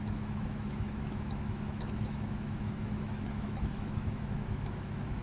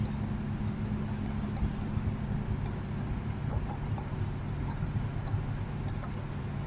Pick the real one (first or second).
second